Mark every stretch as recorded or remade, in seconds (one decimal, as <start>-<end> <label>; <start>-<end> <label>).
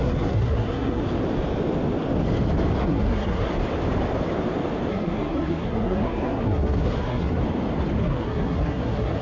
0.0-1.0 remade; 1.0-2.8 recorded; 2.8-3.5 remade; 3.5-4.9 recorded; 4.9-7.4 remade; 7.4-8.0 recorded; 8.0-9.2 remade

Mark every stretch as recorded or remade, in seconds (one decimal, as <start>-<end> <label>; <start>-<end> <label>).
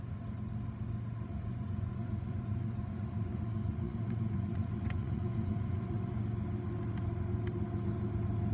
0.0-1.3 recorded; 1.3-6.2 remade; 6.2-8.5 recorded